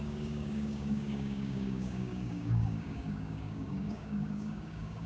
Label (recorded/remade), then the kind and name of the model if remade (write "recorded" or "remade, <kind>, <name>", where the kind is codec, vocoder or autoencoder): remade, codec, DAC